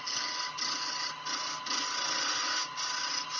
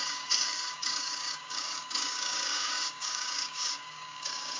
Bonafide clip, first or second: first